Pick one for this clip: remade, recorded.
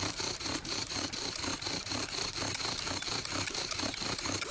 remade